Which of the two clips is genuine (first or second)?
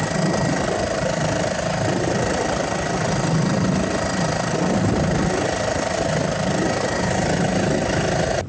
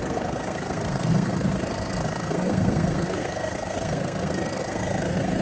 first